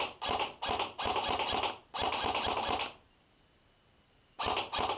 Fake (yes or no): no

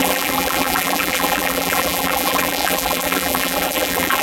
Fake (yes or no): yes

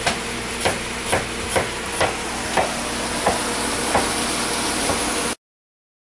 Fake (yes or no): no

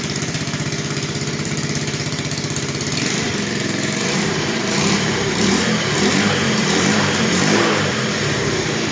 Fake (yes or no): yes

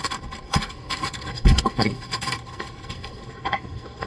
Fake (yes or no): yes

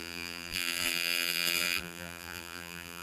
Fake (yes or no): yes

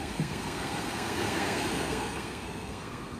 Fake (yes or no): yes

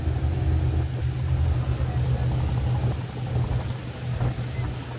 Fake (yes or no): no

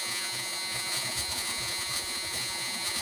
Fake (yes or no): yes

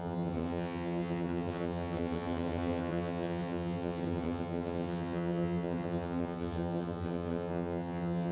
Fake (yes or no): yes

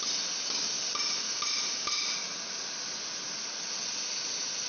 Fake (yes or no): no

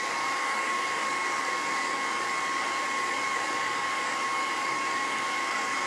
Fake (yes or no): yes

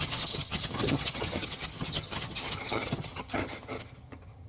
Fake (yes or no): yes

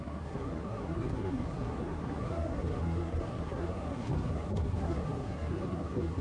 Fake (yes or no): yes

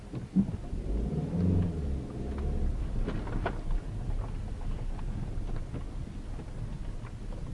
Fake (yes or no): no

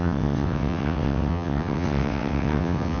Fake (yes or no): yes